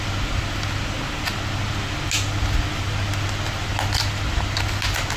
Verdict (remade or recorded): recorded